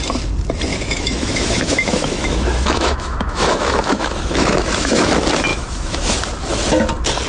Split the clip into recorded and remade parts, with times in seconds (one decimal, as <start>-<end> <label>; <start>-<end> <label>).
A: 0.0-0.7 recorded; 0.7-5.1 remade; 5.1-5.5 recorded; 5.5-6.1 remade; 6.1-7.3 recorded